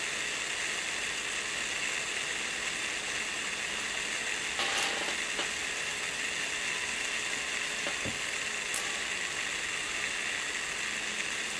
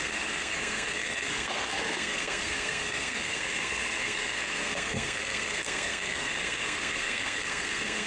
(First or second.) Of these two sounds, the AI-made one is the second